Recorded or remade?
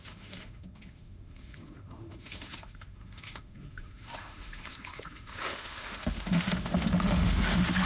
remade